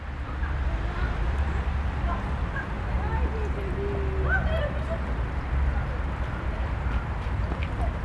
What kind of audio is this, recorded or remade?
recorded